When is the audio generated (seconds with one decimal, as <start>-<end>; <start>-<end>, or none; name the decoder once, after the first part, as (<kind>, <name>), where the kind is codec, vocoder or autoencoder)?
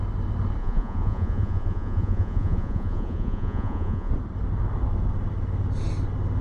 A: 0.6-4.1 (vocoder, Vocos)